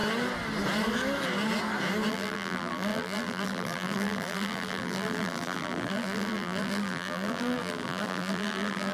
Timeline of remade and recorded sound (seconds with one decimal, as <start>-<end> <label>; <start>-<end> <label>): 0.0-2.1 recorded; 2.1-8.9 remade